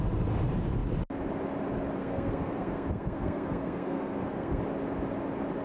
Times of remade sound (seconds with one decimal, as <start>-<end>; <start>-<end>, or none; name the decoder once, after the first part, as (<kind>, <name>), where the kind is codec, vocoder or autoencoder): 2.0-4.6 (codec, SNAC)

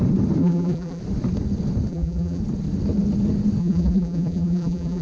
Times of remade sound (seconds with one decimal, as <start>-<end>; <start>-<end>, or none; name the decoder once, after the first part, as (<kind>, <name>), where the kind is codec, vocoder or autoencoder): 0.4-1.0 (vocoder, BigVGAN v2); 1.9-2.4; 3.6-5.0